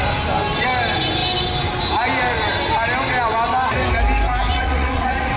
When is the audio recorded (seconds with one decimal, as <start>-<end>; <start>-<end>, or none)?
0.0-4.5